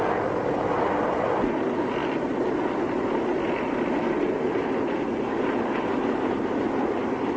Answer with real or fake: real